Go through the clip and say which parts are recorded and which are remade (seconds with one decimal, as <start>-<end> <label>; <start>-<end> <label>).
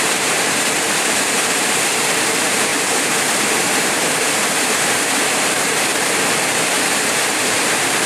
0.0-5.9 remade; 5.9-6.8 recorded; 6.8-8.1 remade